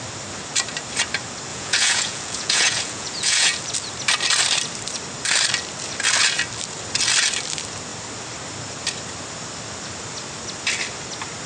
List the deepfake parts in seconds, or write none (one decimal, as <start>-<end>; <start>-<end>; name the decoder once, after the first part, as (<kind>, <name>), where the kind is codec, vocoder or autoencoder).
1.5-3.6 (vocoder, Vocos)